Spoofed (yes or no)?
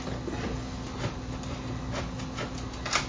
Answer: no